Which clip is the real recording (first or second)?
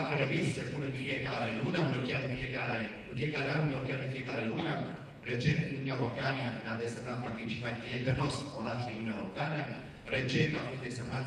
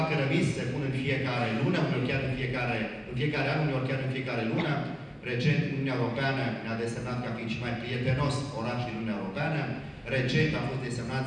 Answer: second